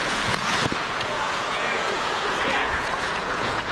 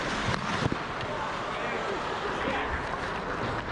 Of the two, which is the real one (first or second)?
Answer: second